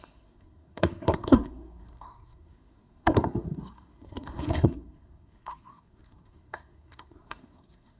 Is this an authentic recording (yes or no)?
no